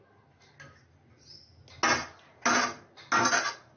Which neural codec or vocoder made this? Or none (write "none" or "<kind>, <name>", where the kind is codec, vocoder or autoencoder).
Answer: none